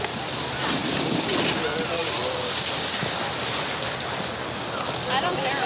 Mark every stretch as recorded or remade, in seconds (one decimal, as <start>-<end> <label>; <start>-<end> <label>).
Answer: 0.0-0.8 recorded; 0.8-1.3 remade; 1.3-2.0 recorded; 2.0-5.7 remade